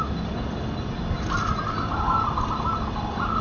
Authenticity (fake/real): real